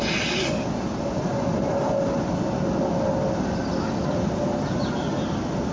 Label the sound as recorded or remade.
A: recorded